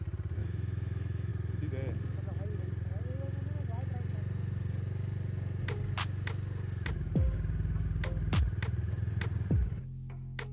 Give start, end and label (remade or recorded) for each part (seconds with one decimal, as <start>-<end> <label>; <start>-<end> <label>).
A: 0.0-0.4 recorded; 0.4-1.3 remade; 1.3-10.5 recorded